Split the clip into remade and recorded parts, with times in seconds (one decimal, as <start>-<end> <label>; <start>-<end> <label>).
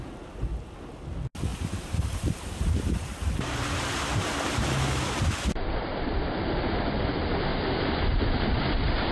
0.0-1.5 recorded; 1.5-5.2 remade; 5.2-7.5 recorded; 7.5-8.6 remade; 8.6-9.1 recorded